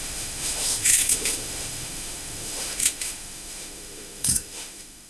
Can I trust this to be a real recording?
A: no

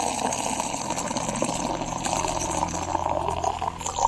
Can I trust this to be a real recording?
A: yes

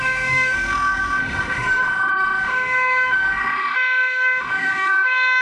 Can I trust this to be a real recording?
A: no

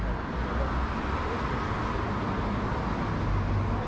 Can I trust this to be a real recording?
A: yes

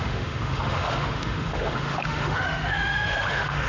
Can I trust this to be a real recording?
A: no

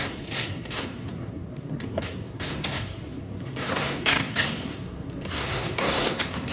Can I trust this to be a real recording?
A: no